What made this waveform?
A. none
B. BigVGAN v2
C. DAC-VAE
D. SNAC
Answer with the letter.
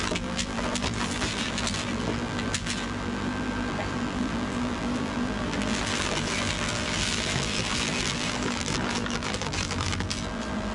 B